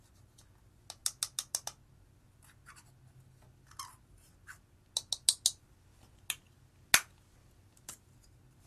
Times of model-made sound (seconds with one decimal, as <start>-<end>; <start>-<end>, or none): none